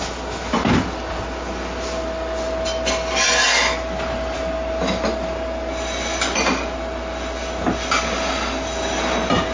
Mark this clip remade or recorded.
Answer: recorded